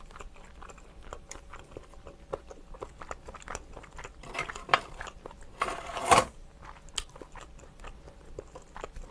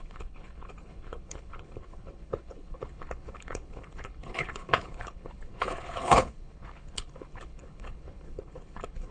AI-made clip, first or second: second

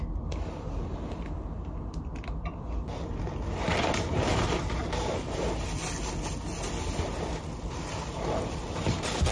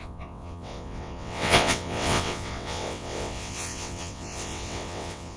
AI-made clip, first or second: second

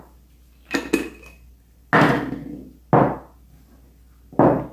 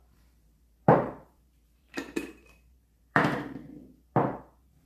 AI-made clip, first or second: second